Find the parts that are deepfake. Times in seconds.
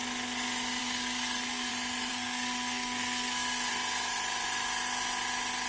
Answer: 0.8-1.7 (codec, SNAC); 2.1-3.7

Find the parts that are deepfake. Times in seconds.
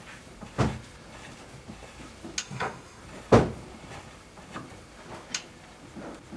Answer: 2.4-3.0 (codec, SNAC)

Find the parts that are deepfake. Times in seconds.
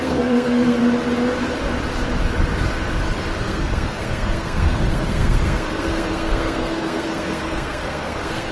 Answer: 0.0-0.8 (codec, SNAC); 3.4-8.5